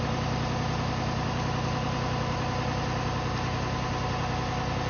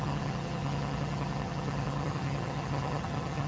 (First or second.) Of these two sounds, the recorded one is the first